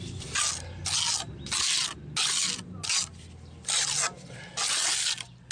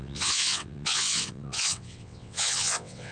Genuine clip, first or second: first